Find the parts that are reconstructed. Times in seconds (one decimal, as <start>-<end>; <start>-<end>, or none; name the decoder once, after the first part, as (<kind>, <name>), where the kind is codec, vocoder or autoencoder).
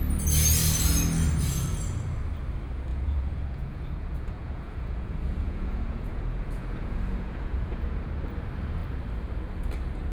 2.9-8.1 (vocoder, Vocos)